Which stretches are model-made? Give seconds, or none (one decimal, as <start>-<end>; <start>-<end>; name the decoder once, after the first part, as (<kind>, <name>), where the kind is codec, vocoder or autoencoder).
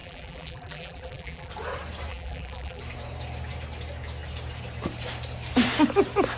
0.0-1.5 (vocoder, BigVGAN v2); 2.1-2.8